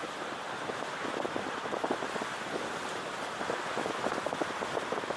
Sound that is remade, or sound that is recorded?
recorded